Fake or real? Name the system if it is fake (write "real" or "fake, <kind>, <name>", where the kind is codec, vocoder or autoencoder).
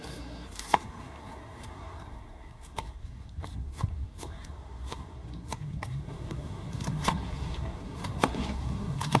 fake, codec, SNAC